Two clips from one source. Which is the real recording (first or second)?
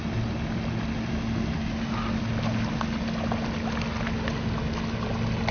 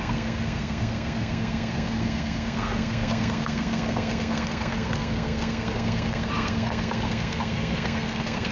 first